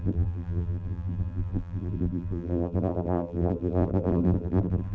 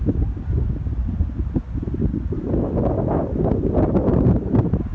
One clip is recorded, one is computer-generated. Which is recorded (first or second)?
second